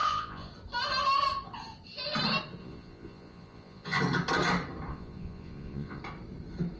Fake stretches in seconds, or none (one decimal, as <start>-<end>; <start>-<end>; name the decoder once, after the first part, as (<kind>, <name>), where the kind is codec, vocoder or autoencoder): 0.0-0.5 (vocoder, Vocos); 2.6-4.0; 4.9-6.0